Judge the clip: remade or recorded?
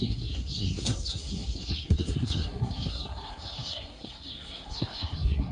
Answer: remade